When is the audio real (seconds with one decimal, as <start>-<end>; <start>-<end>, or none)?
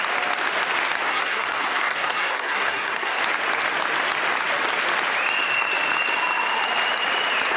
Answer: 0.0-1.1; 3.2-7.6